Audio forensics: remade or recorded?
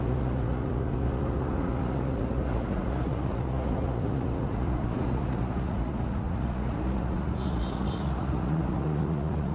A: remade